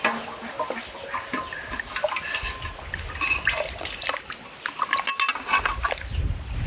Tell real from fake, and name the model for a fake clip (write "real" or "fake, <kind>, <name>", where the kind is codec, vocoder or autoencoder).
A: real